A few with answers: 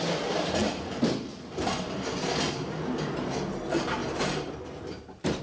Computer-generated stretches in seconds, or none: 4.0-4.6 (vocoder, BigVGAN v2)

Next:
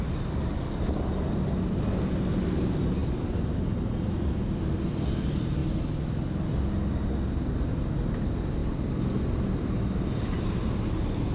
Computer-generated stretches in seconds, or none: none

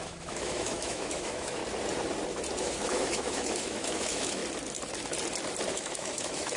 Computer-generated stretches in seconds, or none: 0.0-1.6 (autoencoder, DAC-VAE); 2.6-4.4; 5.7-6.6